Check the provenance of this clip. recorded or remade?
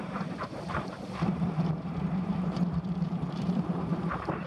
remade